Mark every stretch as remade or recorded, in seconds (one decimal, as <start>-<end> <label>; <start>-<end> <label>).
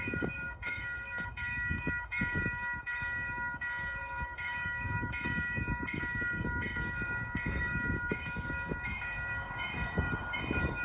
0.0-10.8 remade